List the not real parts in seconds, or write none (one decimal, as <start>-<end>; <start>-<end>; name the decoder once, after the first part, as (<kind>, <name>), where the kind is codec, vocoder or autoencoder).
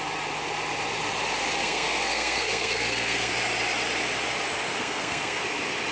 1.6-3.3 (codec, SNAC); 4.7-5.4